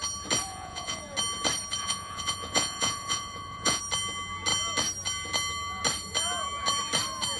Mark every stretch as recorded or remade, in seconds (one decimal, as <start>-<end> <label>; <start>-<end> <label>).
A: 0.0-0.5 recorded; 0.5-1.0 remade; 1.0-1.8 recorded; 1.8-3.8 remade; 3.8-7.4 recorded